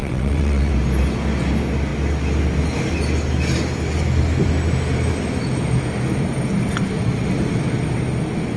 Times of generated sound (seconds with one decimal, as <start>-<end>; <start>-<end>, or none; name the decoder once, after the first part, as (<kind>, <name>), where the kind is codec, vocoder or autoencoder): 0.0-0.7 (vocoder, WaveNeXt)